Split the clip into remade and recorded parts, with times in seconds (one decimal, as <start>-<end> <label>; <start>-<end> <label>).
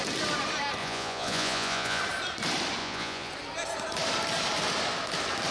0.0-0.8 recorded; 0.8-2.0 remade; 2.0-2.8 recorded; 2.8-3.3 remade; 3.3-5.5 recorded